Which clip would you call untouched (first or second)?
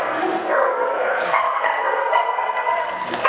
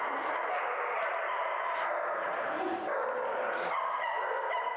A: second